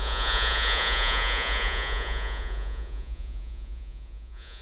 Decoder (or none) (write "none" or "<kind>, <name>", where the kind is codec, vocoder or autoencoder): vocoder, Vocos